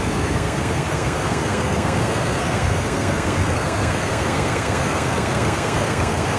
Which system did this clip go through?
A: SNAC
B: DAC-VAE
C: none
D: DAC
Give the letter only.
A